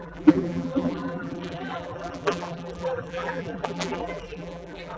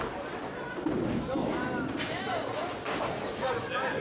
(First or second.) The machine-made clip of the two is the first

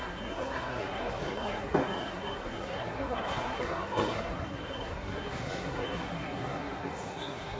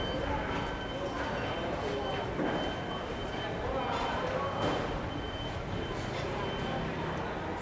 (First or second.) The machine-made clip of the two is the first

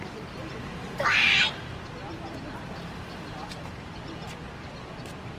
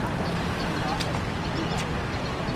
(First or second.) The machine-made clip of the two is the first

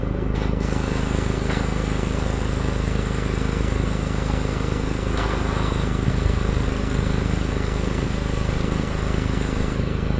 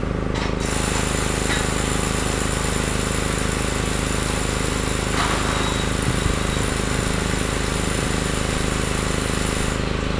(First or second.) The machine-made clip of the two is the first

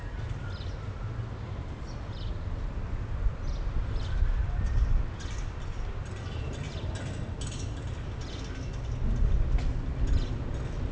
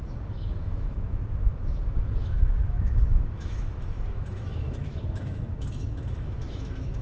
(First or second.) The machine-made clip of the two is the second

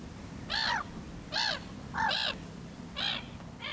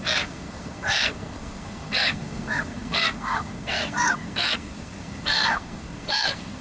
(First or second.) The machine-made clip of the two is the second